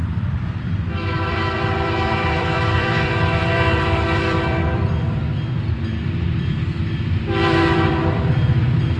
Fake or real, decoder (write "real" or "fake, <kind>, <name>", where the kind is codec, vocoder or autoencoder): fake, vocoder, BigVGAN v2